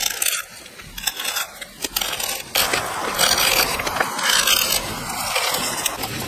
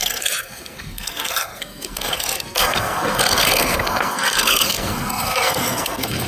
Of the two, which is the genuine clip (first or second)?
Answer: first